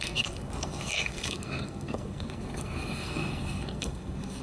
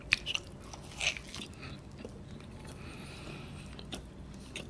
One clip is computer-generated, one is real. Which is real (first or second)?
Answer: second